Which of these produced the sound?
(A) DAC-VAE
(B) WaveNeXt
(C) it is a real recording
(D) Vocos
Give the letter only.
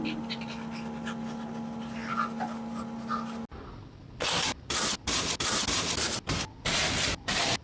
C